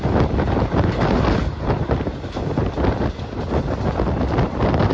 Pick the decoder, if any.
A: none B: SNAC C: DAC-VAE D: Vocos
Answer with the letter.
A